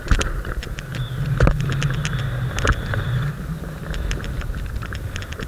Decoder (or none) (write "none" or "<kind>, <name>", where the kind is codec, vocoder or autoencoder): none